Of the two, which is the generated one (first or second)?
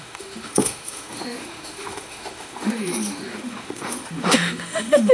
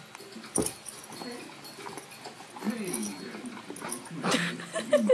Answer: first